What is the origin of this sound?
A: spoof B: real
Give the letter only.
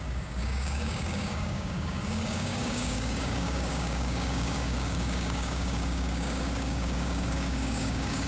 A